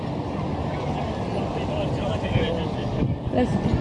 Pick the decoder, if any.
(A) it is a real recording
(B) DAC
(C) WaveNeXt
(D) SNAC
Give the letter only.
A